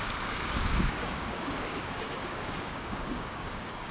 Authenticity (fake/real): fake